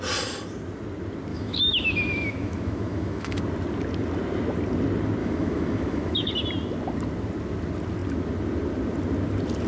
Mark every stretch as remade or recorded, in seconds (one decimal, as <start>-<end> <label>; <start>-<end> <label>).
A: 0.0-1.3 recorded; 1.3-3.4 remade; 3.4-5.2 recorded; 5.2-6.3 remade; 6.3-9.7 recorded